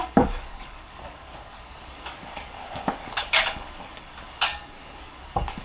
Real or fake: fake